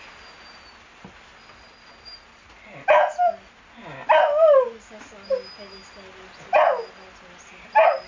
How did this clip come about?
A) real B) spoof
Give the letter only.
A